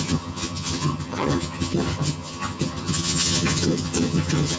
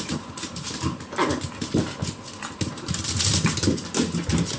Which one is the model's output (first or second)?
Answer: first